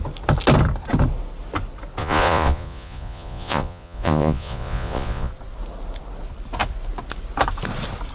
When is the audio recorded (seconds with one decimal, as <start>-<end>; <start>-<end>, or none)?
0.0-2.0; 5.3-8.1